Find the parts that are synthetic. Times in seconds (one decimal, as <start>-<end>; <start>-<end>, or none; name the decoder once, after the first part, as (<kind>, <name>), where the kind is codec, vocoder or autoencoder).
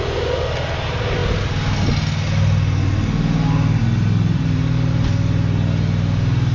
none